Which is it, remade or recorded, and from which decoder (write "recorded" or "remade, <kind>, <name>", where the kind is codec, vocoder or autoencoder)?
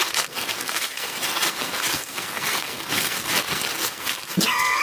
remade, codec, SNAC